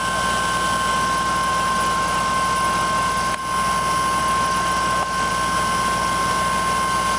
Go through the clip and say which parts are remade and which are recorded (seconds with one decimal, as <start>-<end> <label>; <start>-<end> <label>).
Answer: 0.0-0.9 recorded; 0.9-3.4 remade; 3.4-4.2 recorded; 4.2-5.3 remade; 5.3-7.2 recorded